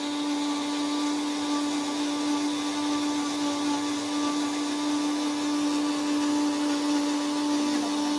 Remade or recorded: recorded